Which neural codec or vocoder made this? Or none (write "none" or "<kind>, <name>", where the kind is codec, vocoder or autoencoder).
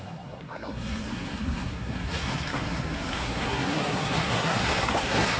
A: codec, SNAC